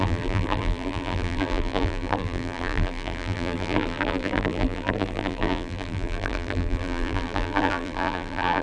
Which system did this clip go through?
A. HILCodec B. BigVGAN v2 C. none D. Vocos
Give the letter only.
B